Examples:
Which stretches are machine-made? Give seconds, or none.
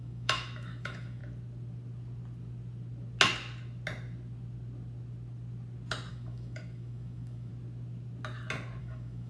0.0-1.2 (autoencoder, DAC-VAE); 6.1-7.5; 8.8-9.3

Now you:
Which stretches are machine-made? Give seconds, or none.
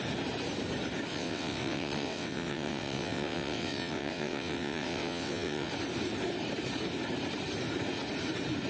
1.1-5.7 (vocoder, WaveNeXt)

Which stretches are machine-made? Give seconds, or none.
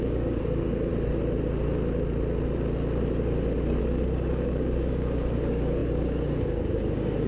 0.0-0.9 (codec, DAC); 3.8-7.3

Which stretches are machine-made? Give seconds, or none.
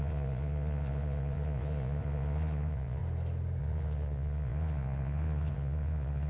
0.0-3.0 (vocoder, Vocos); 3.6-6.3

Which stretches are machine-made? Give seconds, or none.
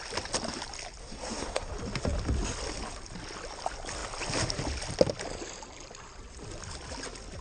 1.0-1.7 (codec, SNAC)